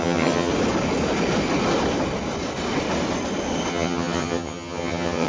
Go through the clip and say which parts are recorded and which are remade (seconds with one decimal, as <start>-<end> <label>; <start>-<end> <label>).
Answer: 0.0-0.5 remade; 0.5-3.7 recorded; 3.7-5.3 remade